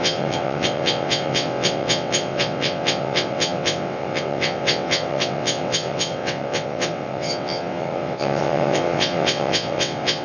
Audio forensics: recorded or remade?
remade